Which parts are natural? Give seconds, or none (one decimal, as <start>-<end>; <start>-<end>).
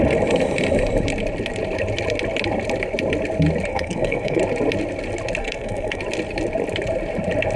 0.0-3.7; 4.4-5.4; 6.0-7.6